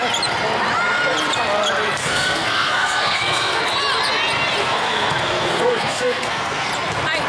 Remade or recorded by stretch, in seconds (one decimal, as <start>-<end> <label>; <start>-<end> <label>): 0.0-2.0 recorded; 2.0-3.6 remade; 3.6-4.6 recorded; 4.6-6.7 remade; 6.7-7.3 recorded